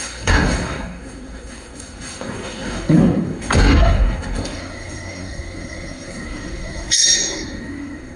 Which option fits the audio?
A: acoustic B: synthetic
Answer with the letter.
B